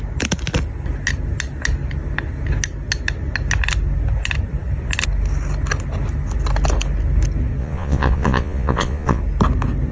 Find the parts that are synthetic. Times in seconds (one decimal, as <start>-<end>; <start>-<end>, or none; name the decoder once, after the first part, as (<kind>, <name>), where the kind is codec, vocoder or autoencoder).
7.6-9.2 (vocoder, Vocos)